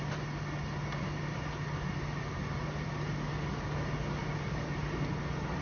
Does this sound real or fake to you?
real